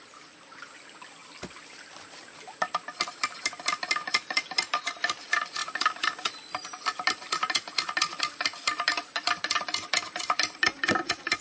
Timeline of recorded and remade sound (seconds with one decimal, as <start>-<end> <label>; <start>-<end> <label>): 0.0-11.4 recorded